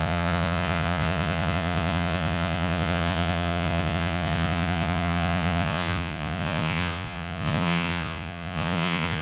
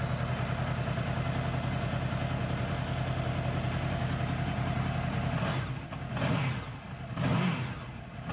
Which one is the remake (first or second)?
first